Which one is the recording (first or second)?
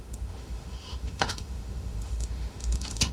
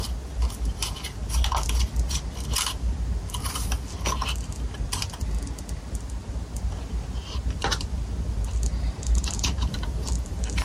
second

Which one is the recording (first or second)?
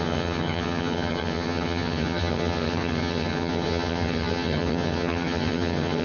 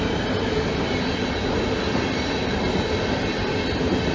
second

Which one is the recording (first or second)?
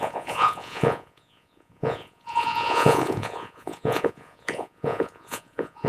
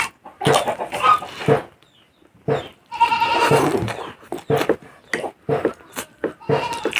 second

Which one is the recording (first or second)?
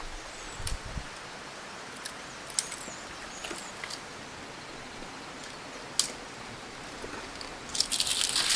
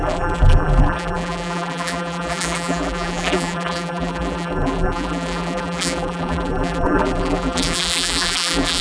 first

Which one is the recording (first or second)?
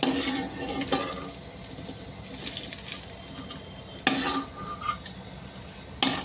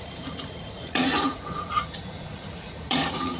first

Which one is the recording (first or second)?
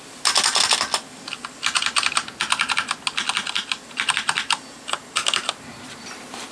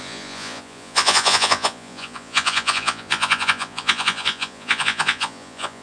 first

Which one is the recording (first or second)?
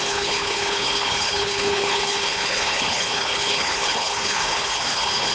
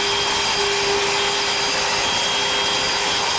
second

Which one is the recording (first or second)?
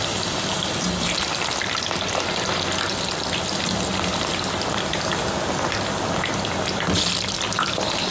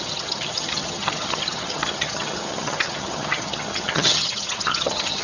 first